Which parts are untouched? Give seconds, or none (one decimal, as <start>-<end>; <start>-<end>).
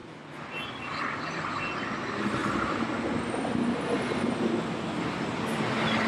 0.0-6.1